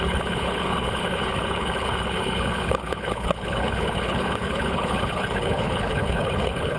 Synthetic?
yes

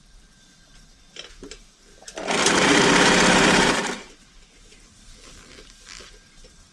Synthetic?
yes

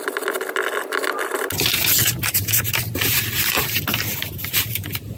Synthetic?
no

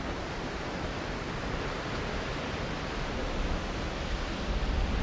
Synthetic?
no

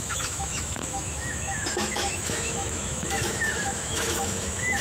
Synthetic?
yes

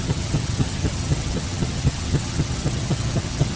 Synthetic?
yes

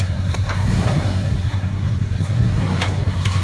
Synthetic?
yes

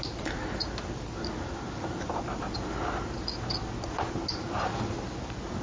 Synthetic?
no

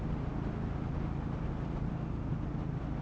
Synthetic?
no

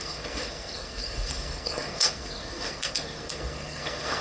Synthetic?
yes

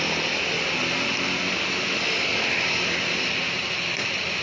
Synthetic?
no